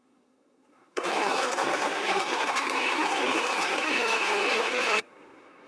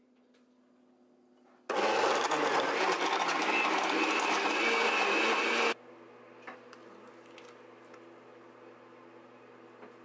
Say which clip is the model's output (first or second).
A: first